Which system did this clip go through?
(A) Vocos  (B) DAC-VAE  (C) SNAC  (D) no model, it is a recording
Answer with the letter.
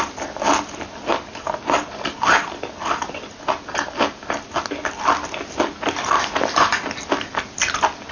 D